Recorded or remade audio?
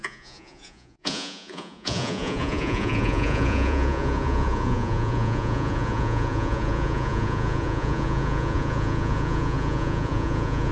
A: remade